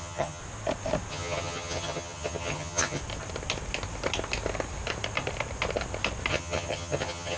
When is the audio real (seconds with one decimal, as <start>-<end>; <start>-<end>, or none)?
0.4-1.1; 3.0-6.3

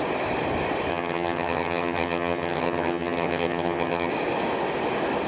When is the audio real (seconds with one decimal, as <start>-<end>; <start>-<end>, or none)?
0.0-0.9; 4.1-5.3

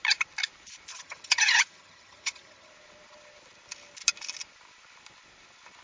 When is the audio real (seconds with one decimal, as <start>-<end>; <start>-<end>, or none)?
0.0-0.9; 2.7-5.8

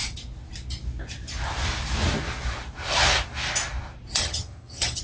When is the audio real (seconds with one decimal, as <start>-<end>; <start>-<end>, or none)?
0.0-4.2

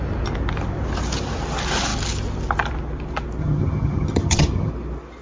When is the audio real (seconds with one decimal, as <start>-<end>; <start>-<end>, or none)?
0.0-3.4; 4.7-5.2

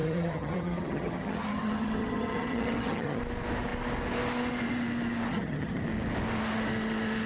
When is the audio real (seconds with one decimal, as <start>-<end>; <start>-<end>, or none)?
3.2-5.3; 5.8-7.3

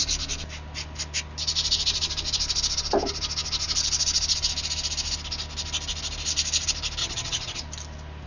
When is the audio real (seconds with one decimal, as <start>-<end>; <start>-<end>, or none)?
0.0-7.0; 7.6-8.3